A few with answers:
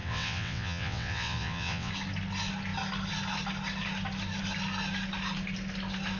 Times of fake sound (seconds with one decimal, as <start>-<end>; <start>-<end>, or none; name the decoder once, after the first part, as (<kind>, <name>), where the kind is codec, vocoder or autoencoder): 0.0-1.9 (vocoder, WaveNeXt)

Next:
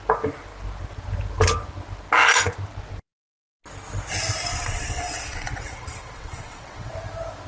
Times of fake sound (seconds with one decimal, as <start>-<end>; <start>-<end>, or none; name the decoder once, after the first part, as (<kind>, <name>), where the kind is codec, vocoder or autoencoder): 4.5-6.9 (vocoder, WaveNeXt)

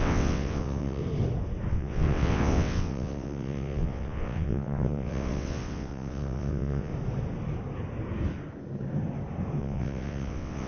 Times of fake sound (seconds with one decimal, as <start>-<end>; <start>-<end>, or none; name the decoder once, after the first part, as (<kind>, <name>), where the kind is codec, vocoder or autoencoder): 0.0-1.0 (vocoder, WaveNeXt); 1.7-6.9; 9.6-10.7